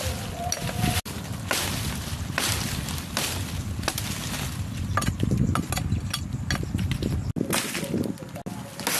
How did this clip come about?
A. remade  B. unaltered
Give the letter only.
B